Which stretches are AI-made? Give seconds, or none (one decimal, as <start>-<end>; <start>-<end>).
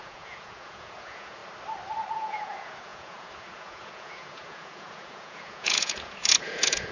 0.0-1.4; 2.1-6.9